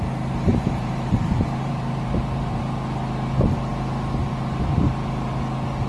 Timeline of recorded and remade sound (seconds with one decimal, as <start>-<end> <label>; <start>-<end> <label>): 0.0-0.5 recorded; 0.5-2.6 remade; 2.6-5.9 recorded

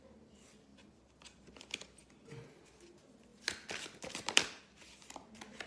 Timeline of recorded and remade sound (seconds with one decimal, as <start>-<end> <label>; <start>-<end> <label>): 0.0-3.3 recorded; 3.3-4.6 remade; 4.6-5.7 recorded

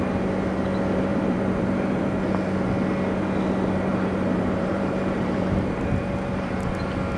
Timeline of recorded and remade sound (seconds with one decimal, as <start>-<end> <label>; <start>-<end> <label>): 0.0-1.1 recorded; 1.1-2.2 remade; 2.2-3.9 recorded; 3.9-6.7 remade; 6.7-7.2 recorded

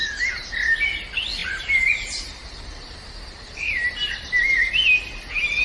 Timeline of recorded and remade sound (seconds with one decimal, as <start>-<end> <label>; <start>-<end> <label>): 0.0-0.5 remade; 0.5-1.4 recorded; 1.4-4.8 remade; 4.8-5.6 recorded

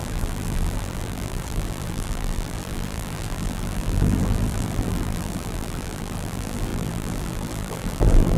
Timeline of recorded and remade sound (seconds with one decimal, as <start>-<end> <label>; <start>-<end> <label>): 0.0-8.4 remade

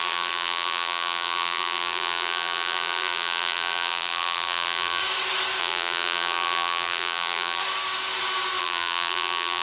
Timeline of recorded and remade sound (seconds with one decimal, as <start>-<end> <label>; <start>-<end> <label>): 0.0-5.0 remade; 5.0-5.6 recorded; 5.6-7.6 remade; 7.6-8.6 recorded; 8.6-9.6 remade

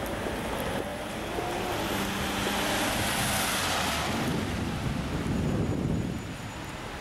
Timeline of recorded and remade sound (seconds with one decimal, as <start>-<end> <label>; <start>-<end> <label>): 0.0-7.0 recorded

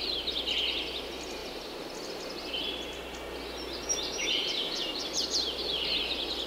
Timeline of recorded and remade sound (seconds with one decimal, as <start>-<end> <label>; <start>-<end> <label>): 0.0-1.4 recorded; 1.4-2.5 remade; 2.5-4.2 recorded; 4.2-4.9 remade; 4.9-6.5 recorded